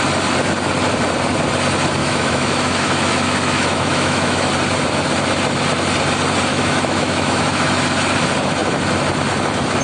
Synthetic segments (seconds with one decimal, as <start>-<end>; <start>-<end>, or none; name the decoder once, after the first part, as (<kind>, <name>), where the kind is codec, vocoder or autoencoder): 2.0-4.5 (autoencoder, DAC-VAE); 6.5-7.7